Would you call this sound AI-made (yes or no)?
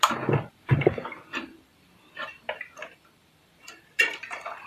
yes